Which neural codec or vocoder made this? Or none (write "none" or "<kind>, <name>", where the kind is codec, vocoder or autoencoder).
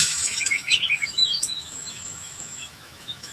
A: autoencoder, DAC-VAE